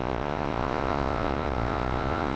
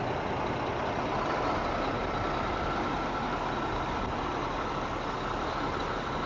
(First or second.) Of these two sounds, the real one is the second